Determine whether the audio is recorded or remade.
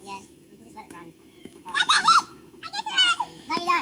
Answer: remade